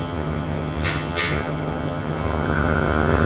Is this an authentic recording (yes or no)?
no